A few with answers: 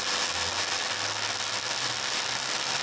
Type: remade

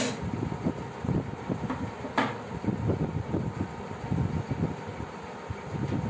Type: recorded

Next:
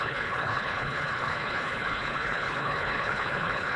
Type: remade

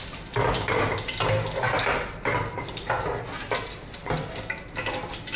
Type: recorded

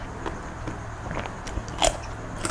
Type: recorded